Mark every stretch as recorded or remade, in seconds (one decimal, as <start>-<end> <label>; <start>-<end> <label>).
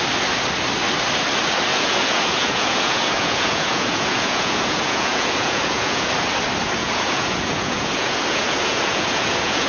0.0-1.7 recorded; 1.7-6.1 remade; 6.1-6.8 recorded; 6.8-9.7 remade